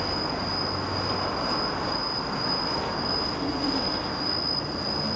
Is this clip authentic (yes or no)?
yes